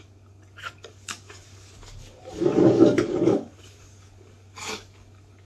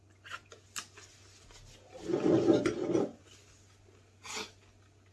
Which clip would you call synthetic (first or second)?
first